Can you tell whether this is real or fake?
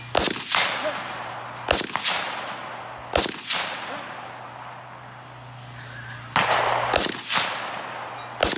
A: real